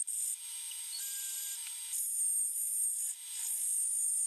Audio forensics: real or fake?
real